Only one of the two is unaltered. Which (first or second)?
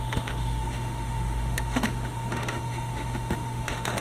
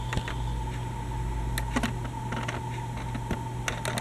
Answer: second